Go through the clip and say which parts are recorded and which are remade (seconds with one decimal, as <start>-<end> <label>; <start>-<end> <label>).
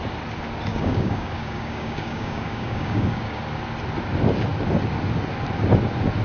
0.0-0.7 recorded; 0.7-3.4 remade; 3.4-6.2 recorded